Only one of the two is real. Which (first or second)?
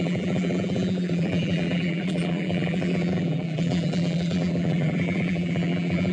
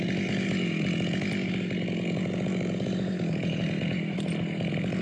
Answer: second